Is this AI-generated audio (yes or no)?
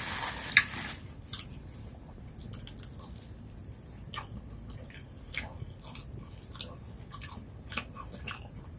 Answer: no